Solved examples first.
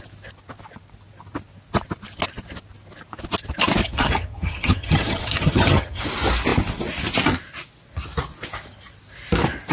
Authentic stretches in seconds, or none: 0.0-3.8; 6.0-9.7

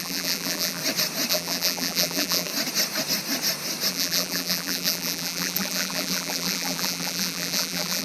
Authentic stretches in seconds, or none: 0.8-1.3; 2.5-3.9

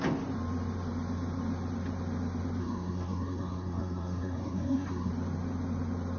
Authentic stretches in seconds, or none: 0.0-2.6; 5.1-6.2

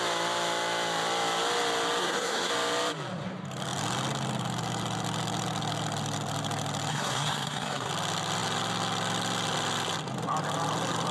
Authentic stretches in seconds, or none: 0.0-2.0; 2.5-6.9; 7.9-11.1

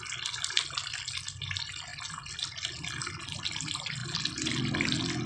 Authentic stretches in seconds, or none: 0.0-5.3

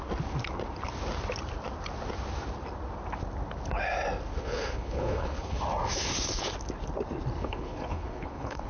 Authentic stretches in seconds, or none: 0.0-4.4; 5.6-7.4

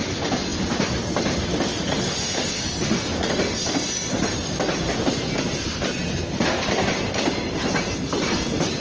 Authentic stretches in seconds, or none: 0.0-8.8

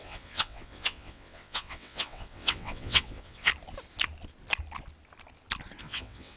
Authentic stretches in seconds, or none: 3.5-5.8